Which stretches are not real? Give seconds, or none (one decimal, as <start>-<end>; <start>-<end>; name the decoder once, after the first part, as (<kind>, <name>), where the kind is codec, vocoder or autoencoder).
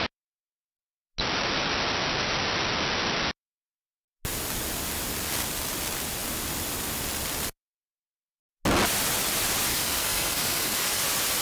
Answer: 9.7-11.0 (codec, SNAC)